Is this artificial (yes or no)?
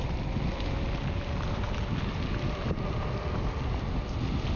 no